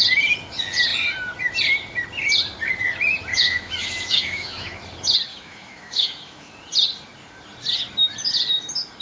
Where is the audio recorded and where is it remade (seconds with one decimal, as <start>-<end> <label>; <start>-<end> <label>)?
0.0-3.3 recorded; 3.3-4.8 remade; 4.8-5.3 recorded; 5.3-6.5 remade; 6.5-9.0 recorded